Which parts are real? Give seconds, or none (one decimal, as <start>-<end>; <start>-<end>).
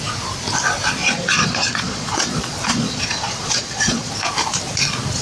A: 0.0-1.0; 4.1-5.2